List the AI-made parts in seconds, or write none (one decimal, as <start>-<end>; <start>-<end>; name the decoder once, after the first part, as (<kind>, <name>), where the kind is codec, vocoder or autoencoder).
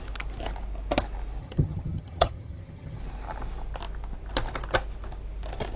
1.4-3.0 (vocoder, HiFi-GAN)